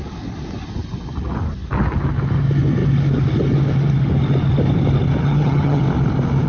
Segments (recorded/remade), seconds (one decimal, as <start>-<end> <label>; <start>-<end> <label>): 0.0-5.2 recorded; 5.2-5.8 remade; 5.8-6.5 recorded